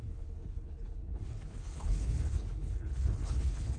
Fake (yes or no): yes